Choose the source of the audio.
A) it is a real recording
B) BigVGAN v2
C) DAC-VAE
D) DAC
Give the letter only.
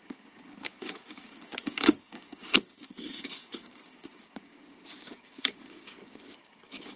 D